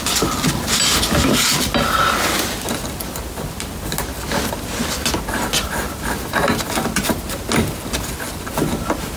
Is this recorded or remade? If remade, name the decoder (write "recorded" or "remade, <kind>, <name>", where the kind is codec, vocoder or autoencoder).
recorded